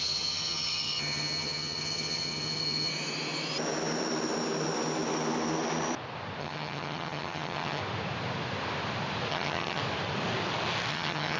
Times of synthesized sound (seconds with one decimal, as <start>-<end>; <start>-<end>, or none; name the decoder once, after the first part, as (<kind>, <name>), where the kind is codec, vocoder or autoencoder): 0.0-2.9 (vocoder, HiFi-GAN); 6.4-7.8; 9.3-9.8; 10.9-11.4

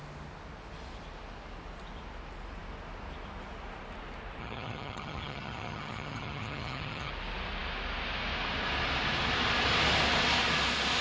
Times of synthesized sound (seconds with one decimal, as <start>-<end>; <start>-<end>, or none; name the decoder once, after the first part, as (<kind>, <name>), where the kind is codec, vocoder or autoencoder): 4.4-7.1 (vocoder, HiFi-GAN)

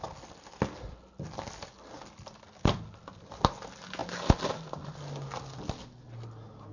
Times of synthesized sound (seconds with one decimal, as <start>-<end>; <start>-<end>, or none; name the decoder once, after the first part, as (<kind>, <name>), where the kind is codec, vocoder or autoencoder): none

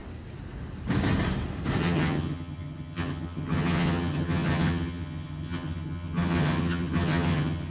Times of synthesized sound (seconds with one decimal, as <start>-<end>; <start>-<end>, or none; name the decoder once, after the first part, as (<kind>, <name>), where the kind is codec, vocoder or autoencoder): 1.8-7.7 (vocoder, HiFi-GAN)

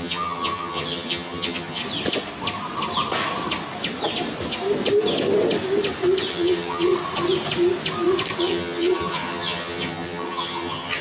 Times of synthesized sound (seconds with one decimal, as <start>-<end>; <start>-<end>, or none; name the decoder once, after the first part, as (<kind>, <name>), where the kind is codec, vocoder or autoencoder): 0.0-1.8 (vocoder, HiFi-GAN); 6.3-6.9; 8.4-11.0

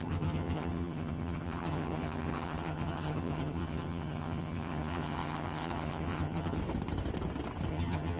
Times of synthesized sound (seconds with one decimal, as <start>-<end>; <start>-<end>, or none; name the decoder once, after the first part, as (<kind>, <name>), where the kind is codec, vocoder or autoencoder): 0.0-6.6 (vocoder, HiFi-GAN); 7.7-8.2